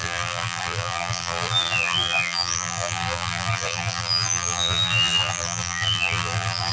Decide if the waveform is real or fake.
fake